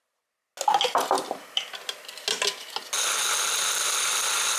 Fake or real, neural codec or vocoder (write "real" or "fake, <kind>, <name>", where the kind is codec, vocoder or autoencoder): real